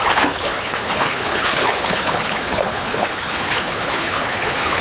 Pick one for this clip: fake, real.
fake